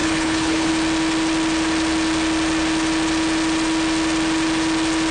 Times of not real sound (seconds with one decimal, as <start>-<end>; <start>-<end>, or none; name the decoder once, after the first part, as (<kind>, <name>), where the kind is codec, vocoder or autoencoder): 0.0-0.7 (codec, HILCodec)

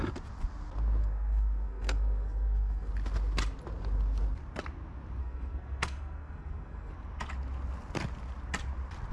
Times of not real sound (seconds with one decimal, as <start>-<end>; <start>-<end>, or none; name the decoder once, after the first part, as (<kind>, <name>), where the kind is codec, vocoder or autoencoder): 1.0-2.9 (codec, SNAC); 5.2-6.9

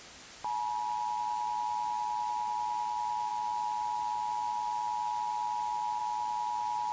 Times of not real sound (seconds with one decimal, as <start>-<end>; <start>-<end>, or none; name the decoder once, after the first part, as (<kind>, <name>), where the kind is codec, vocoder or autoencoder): none

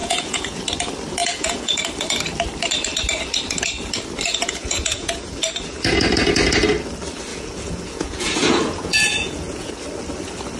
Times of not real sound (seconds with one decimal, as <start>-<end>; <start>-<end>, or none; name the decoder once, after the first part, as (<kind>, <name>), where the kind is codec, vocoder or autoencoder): 0.0-0.6 (vocoder, Vocos); 1.2-1.8; 4.3-5.4; 7.3-9.7

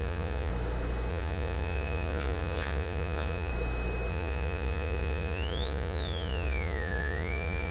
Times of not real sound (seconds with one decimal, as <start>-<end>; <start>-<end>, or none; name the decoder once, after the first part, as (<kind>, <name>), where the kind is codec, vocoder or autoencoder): 0.0-0.5 (vocoder, Vocos); 1.1-3.5; 4.1-7.7